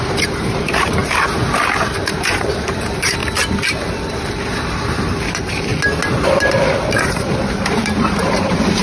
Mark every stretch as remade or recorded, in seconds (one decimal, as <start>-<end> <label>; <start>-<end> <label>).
0.0-1.0 remade; 1.0-2.2 recorded; 2.2-3.2 remade; 3.2-4.1 recorded; 4.1-5.7 remade; 5.7-6.4 recorded; 6.4-8.8 remade